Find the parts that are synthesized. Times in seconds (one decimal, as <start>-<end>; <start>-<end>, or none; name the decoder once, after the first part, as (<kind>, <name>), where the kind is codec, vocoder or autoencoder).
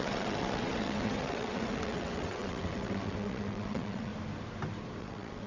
0.0-4.1 (vocoder, WaveNeXt); 5.0-5.5